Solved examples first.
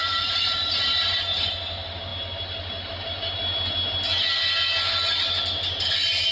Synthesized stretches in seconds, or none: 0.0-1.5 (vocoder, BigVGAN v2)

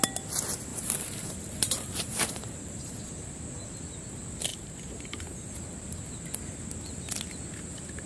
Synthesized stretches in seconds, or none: 0.7-3.0 (vocoder, BigVGAN v2); 4.5-5.5

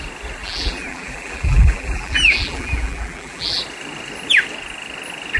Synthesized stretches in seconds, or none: 0.4-3.6 (vocoder, BigVGAN v2)

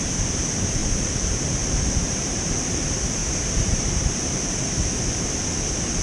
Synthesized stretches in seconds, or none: 0.8-2.5 (vocoder, BigVGAN v2); 3.2-4.7

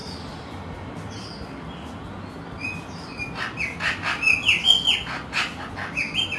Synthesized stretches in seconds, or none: 0.0-1.9 (vocoder, BigVGAN v2)

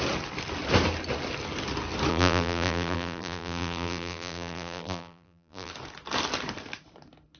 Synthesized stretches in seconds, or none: 2.1-5.7 (vocoder, BigVGAN v2)